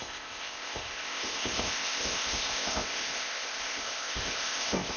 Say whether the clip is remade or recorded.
remade